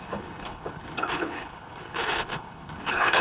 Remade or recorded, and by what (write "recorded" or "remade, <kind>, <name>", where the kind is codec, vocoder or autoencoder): remade, codec, HILCodec